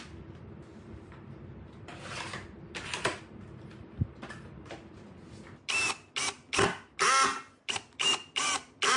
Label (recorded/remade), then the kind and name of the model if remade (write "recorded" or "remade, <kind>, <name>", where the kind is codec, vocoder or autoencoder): recorded